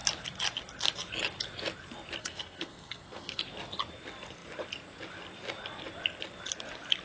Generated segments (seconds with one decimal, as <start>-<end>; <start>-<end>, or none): 2.2-3.4

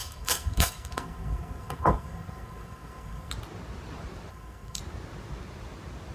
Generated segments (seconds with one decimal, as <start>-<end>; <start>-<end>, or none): 0.0-3.3; 4.3-4.8

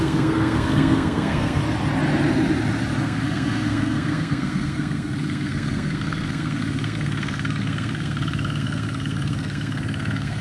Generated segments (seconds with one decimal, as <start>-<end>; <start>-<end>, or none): 0.0-1.6; 3.0-10.4

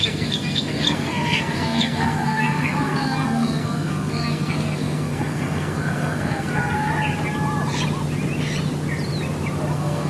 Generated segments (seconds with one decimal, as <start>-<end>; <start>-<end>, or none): 0.0-6.9; 9.7-10.1

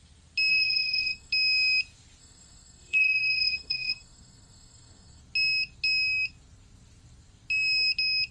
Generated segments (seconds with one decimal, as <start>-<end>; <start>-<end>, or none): 0.5-1.3; 2.2-5.2

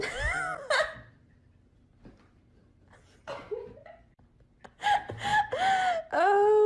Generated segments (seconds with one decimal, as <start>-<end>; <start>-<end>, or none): none

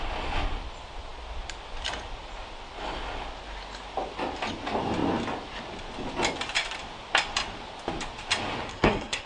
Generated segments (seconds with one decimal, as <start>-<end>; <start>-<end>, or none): 8.7-9.3

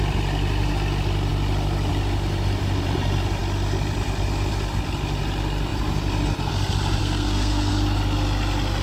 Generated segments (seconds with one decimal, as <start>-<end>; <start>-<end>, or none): 7.0-7.7